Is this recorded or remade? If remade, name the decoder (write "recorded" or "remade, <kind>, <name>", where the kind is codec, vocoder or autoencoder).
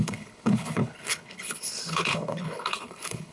remade, codec, HILCodec